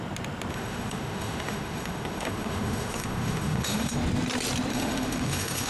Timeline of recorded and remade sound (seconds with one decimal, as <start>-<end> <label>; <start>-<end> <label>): 0.0-0.5 recorded; 0.5-3.9 remade; 3.9-4.7 recorded; 4.7-5.7 remade